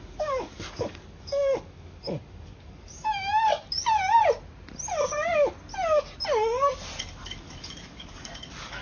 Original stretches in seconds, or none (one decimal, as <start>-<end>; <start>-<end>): 3.5-7.0